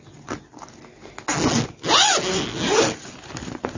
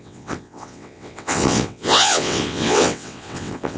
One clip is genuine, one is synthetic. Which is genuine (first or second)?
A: first